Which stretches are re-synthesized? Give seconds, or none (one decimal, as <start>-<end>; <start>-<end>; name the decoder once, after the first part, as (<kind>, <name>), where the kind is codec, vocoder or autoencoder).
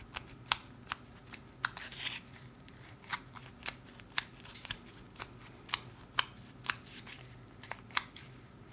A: none